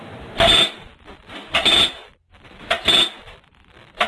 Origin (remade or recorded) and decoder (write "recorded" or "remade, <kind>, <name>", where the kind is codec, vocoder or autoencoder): recorded